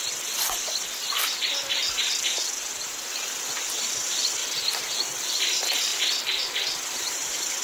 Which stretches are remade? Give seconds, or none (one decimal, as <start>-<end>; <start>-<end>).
1.8-3.6; 4.4-4.9; 5.9-7.6

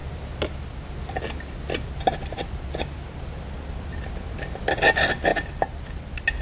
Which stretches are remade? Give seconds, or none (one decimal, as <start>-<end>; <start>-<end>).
none